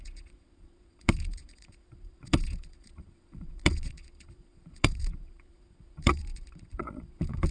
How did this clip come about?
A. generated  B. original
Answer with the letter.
A